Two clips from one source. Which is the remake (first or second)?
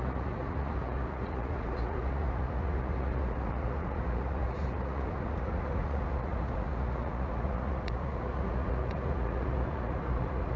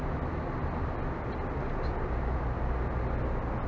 first